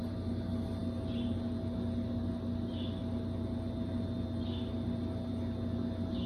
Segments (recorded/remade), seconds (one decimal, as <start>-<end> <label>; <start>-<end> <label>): 0.0-6.3 recorded